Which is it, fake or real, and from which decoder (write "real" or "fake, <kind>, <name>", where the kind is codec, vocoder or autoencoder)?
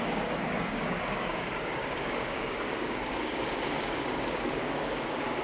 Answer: fake, codec, DAC